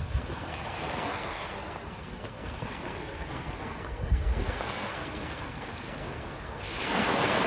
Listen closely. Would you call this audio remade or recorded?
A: remade